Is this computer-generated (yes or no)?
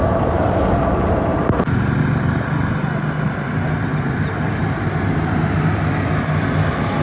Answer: no